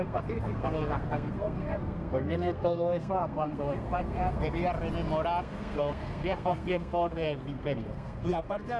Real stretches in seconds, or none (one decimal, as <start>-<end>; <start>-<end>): 4.6-5.4